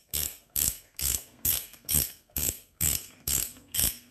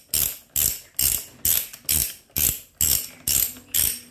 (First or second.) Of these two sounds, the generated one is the first